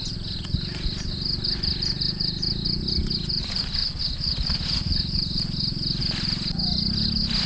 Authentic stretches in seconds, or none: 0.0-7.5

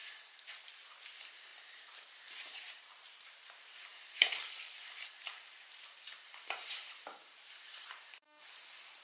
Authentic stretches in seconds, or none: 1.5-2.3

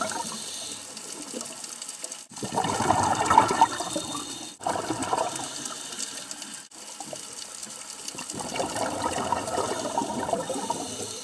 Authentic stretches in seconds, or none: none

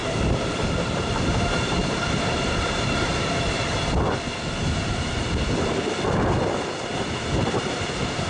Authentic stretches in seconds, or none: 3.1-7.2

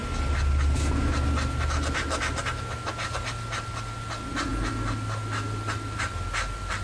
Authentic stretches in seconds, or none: 0.0-6.8